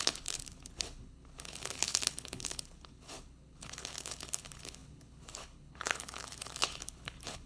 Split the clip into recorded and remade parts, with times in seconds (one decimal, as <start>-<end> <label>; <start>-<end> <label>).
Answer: 0.0-7.5 remade

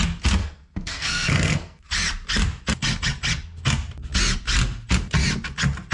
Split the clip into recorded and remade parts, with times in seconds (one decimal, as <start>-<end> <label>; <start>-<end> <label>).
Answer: 0.0-0.4 recorded; 0.4-1.9 remade; 1.9-5.9 recorded